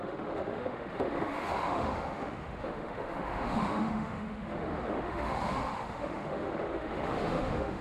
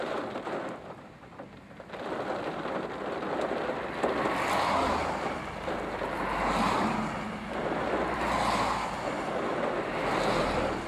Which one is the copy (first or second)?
first